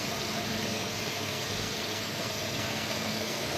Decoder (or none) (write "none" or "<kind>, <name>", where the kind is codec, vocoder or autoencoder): codec, SNAC